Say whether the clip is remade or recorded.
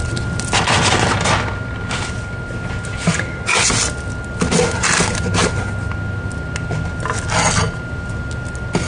recorded